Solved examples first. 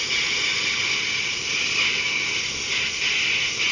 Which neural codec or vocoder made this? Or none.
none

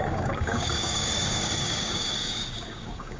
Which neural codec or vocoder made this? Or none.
codec, DAC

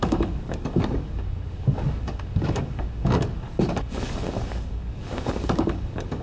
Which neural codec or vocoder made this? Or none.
codec, DAC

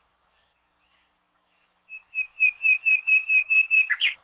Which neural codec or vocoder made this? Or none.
codec, DAC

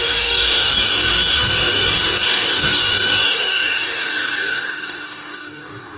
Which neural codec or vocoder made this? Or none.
codec, DAC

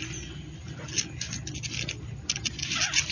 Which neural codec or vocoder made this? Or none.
none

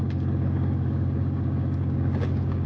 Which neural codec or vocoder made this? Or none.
codec, DAC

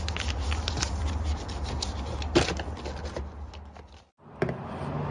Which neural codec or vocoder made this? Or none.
none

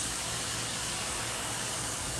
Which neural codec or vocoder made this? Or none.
codec, DAC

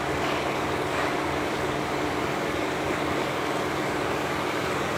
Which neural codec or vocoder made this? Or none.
codec, DAC